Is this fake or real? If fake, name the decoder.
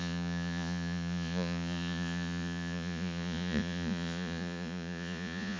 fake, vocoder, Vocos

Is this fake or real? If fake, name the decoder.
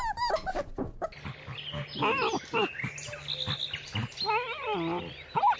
real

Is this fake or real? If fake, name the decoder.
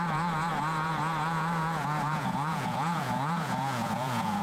fake, vocoder, Vocos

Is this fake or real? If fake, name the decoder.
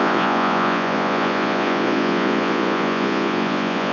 fake, vocoder, Vocos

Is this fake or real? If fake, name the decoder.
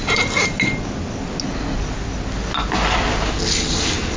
real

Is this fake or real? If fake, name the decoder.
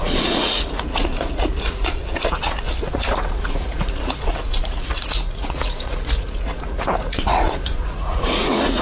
fake, vocoder, Vocos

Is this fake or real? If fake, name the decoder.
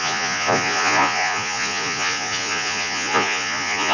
fake, vocoder, Vocos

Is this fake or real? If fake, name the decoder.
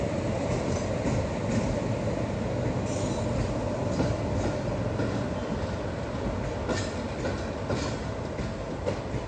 real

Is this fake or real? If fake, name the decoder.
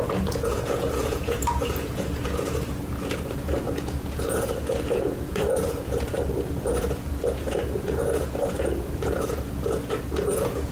fake, vocoder, Vocos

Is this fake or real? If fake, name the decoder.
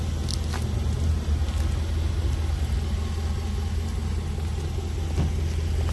real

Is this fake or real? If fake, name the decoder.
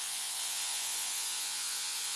fake, vocoder, Vocos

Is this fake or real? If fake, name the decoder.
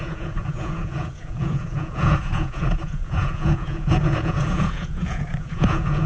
fake, vocoder, Vocos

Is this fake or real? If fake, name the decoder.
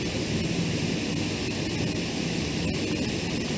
real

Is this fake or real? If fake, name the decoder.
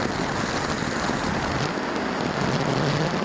real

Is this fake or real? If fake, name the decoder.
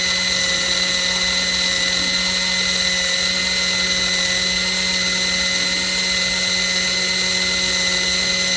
real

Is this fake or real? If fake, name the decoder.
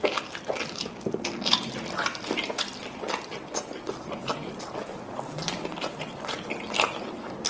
real